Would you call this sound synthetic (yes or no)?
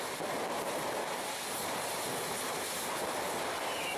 no